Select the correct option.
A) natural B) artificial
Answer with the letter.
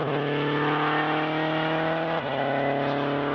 A